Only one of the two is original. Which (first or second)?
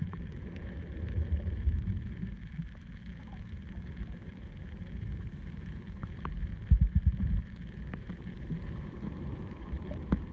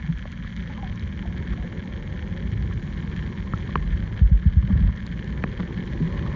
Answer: second